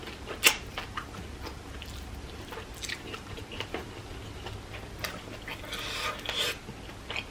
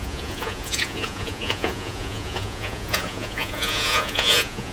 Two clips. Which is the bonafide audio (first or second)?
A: first